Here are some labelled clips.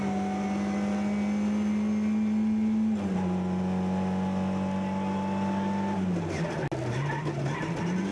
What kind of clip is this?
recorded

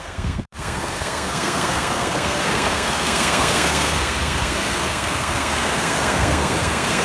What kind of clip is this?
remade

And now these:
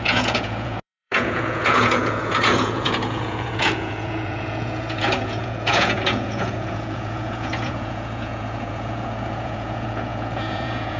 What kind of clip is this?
remade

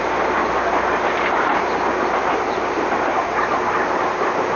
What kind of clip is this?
recorded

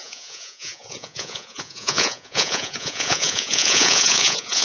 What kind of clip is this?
remade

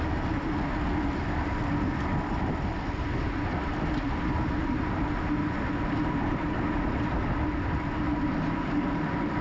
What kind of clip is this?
recorded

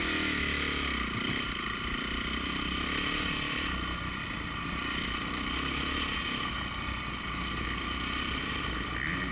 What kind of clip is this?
recorded